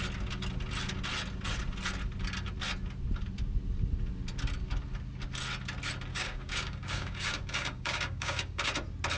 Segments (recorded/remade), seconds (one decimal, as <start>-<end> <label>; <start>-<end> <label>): 0.0-6.1 recorded; 6.1-8.7 remade; 8.7-9.2 recorded